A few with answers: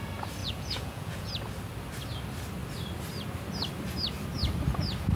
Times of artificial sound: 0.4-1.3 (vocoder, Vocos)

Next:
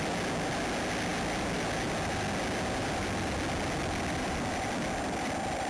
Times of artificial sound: none

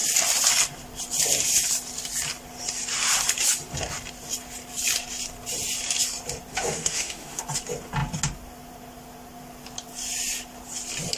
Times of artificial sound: 6.5-7.4 (autoencoder, DAC-VAE)